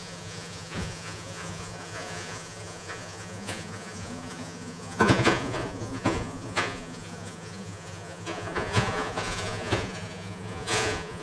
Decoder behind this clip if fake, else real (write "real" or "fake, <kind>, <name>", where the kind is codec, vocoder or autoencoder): fake, vocoder, Vocos